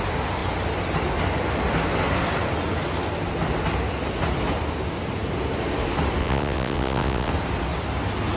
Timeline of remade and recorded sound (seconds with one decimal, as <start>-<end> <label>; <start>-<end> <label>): 0.0-6.2 recorded; 6.2-7.3 remade; 7.3-8.4 recorded